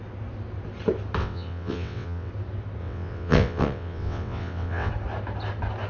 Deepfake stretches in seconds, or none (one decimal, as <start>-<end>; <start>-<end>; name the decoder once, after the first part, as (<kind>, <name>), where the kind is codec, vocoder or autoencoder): 1.2-2.3 (vocoder, WaveNeXt); 2.8-4.9